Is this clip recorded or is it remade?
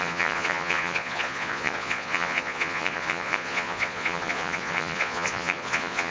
remade